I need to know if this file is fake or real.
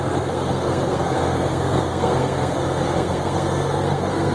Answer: fake